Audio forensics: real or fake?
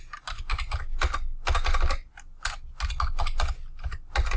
real